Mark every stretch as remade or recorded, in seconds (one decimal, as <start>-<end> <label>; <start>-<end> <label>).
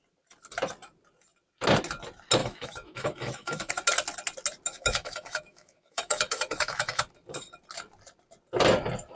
0.0-2.4 recorded; 2.4-3.7 remade; 3.7-4.7 recorded; 4.7-7.0 remade; 7.0-9.2 recorded